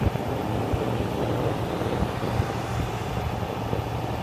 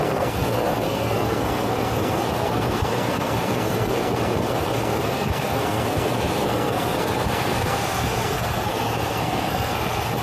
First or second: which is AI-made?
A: second